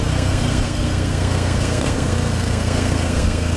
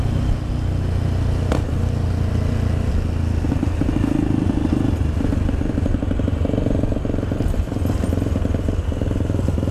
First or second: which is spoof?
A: first